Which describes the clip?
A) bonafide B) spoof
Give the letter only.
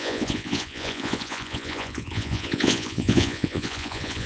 B